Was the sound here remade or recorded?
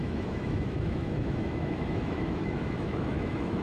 remade